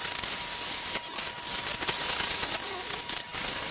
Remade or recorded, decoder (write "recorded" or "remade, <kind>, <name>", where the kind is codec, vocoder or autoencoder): recorded